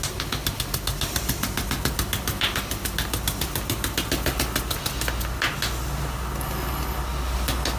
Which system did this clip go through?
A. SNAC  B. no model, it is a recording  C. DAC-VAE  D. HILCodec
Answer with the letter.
B